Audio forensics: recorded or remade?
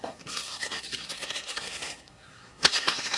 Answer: remade